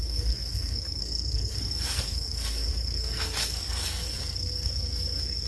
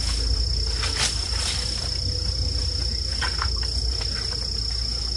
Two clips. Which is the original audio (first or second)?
second